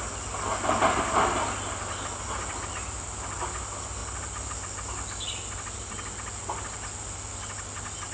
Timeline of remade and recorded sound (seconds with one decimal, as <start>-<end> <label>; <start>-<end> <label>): 0.0-8.1 recorded